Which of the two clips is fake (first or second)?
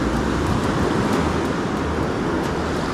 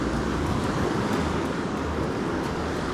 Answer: second